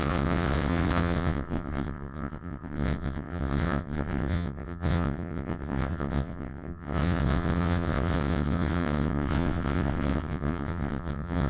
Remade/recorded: remade